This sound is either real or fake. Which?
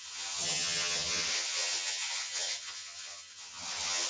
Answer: fake